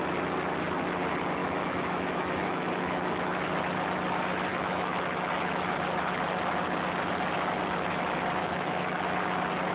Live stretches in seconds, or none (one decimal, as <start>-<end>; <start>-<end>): 0.0-1.4; 3.2-4.5; 5.3-8.4; 9.1-9.7